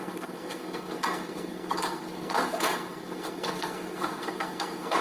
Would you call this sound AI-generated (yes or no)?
yes